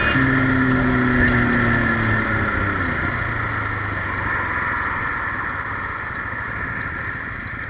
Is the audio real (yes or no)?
yes